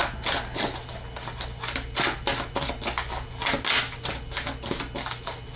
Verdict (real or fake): real